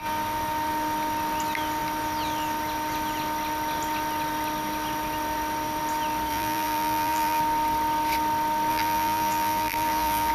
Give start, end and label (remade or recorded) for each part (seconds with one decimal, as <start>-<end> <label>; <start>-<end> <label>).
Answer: 0.0-6.3 recorded; 6.3-7.4 remade; 7.4-8.7 recorded; 8.7-10.3 remade